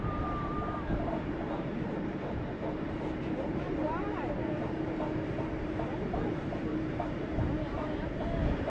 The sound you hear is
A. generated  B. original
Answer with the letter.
A